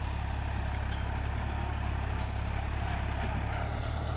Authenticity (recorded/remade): recorded